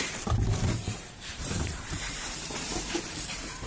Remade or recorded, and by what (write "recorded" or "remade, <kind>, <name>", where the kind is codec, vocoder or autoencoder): remade, vocoder, BigVGAN v2